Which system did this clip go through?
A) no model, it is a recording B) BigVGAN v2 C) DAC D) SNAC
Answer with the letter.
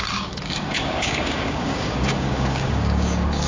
C